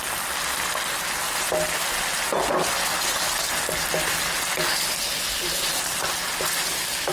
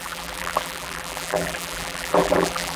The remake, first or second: second